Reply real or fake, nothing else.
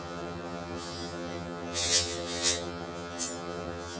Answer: fake